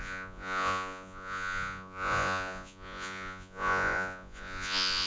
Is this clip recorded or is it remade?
remade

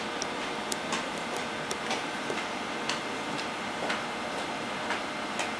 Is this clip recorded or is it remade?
recorded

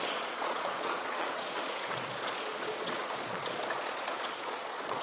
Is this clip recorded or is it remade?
remade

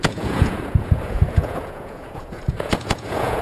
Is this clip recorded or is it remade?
remade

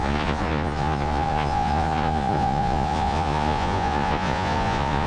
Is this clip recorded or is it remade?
remade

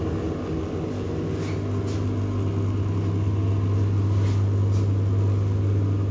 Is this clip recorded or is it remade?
recorded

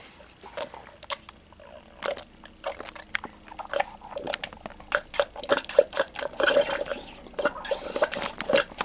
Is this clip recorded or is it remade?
recorded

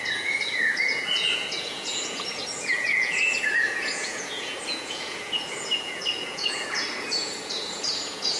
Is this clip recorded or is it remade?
remade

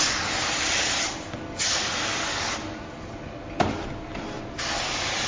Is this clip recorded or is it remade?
recorded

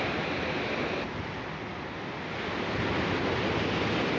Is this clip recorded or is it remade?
recorded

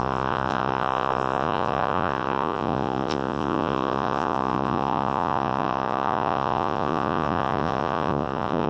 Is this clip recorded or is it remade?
remade